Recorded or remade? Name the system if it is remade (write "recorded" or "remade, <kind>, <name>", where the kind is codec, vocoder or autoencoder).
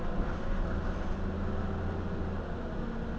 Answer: recorded